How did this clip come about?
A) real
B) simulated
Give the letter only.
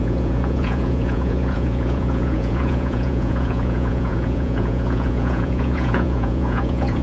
B